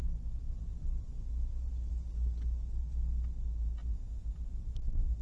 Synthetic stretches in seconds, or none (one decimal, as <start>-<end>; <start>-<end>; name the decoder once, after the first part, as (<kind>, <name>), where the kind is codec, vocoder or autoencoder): 3.8-4.7 (vocoder, Vocos)